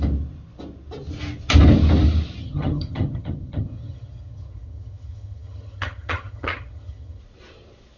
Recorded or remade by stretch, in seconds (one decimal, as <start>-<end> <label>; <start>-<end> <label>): 0.0-2.4 recorded; 2.4-7.2 remade; 7.2-8.0 recorded